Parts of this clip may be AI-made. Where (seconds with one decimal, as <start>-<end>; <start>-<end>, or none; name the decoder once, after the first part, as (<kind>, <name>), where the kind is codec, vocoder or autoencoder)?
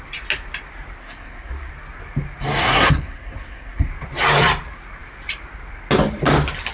1.0-1.7 (codec, SNAC); 2.6-3.9